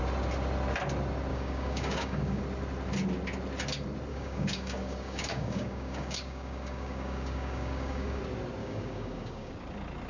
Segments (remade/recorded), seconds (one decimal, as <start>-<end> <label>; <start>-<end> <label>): 0.0-1.3 recorded; 1.3-2.4 remade; 2.4-4.1 recorded; 4.1-8.2 remade; 8.2-8.6 recorded; 8.6-9.5 remade; 9.5-10.1 recorded